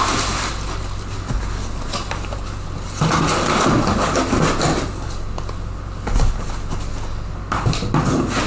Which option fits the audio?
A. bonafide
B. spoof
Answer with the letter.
A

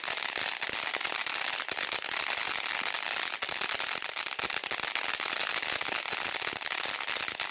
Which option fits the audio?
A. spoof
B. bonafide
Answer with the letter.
B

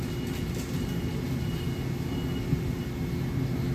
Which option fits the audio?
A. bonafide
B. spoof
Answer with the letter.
A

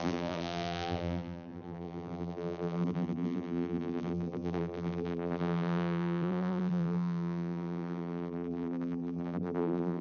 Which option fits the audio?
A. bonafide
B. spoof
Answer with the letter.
B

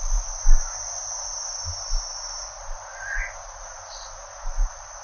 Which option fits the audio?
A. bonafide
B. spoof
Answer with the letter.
A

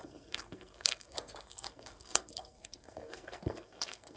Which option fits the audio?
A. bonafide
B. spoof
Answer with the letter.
B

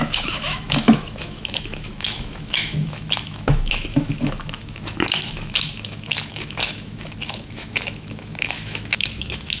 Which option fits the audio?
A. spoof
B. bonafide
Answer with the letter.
A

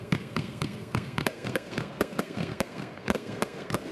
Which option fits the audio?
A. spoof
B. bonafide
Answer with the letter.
A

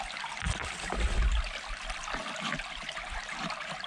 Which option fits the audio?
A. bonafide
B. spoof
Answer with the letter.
A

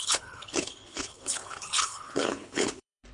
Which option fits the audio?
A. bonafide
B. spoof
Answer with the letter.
B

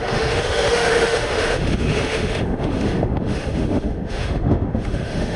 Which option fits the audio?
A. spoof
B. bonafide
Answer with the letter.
A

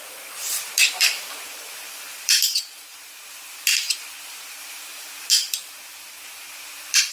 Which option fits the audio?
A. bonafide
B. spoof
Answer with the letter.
B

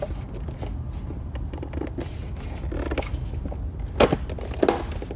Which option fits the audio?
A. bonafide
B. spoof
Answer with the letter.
A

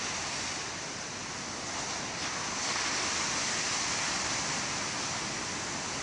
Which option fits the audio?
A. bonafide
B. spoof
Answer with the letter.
A